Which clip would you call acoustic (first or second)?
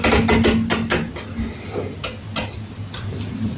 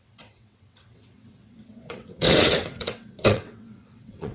first